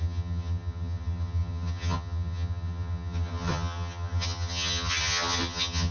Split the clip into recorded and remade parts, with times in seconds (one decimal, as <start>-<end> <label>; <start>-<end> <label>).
0.0-5.9 remade